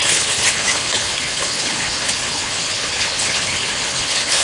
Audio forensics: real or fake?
fake